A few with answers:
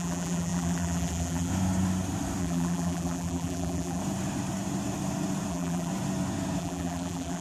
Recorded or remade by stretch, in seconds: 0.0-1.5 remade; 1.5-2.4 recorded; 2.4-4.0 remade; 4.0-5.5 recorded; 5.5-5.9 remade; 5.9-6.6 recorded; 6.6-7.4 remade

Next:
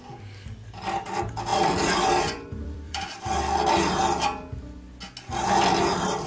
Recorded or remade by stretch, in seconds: 0.0-1.5 recorded; 1.5-3.2 remade; 3.2-6.3 recorded

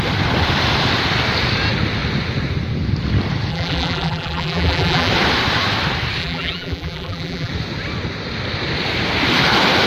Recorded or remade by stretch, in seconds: 0.0-3.5 recorded; 3.5-5.1 remade; 5.1-6.2 recorded; 6.2-7.5 remade; 7.5-9.9 recorded

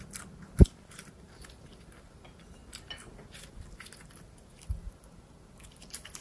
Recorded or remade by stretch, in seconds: 0.0-6.2 recorded

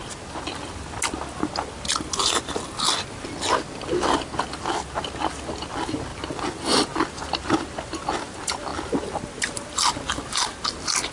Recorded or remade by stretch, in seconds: 0.0-6.1 recorded; 6.1-7.2 remade; 7.2-11.1 recorded

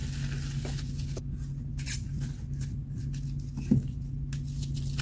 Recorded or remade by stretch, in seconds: 0.0-5.0 recorded

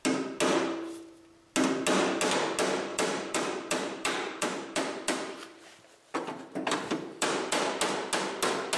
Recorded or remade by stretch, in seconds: 0.0-2.9 recorded; 2.9-7.6 remade; 7.6-8.8 recorded

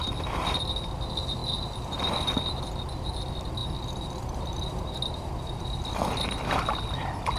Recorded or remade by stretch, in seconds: 0.0-7.4 recorded